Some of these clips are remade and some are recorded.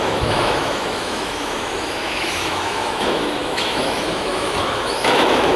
remade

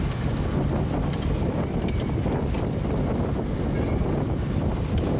recorded